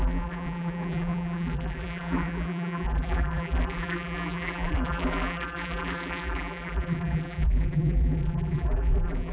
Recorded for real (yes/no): no